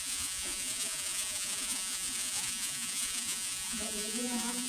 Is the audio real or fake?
fake